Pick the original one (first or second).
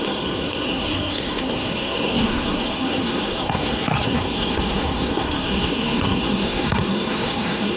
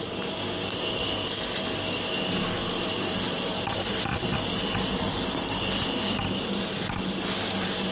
second